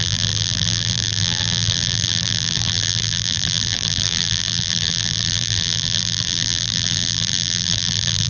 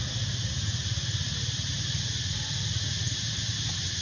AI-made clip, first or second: first